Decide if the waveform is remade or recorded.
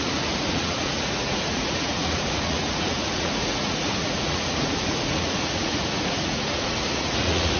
remade